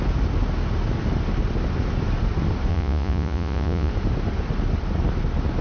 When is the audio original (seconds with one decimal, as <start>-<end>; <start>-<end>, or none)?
0.0-2.7; 3.9-5.6